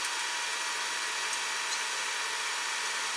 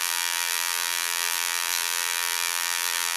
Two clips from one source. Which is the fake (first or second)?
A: second